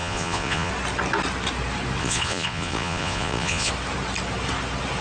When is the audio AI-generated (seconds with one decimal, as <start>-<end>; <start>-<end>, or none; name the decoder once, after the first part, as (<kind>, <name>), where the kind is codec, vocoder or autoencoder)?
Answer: 0.0-0.7 (vocoder, Vocos); 2.0-3.7